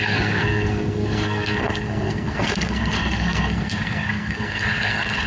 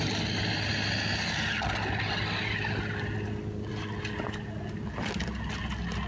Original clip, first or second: second